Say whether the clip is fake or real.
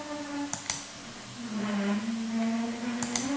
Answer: real